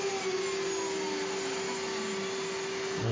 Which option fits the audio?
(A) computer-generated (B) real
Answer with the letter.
B